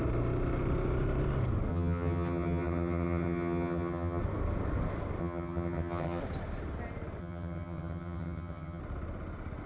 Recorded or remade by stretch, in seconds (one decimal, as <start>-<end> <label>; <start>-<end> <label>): 0.0-1.7 recorded; 1.7-4.2 remade; 4.2-5.2 recorded; 5.2-6.2 remade; 6.2-7.2 recorded; 7.2-8.8 remade; 8.8-9.7 recorded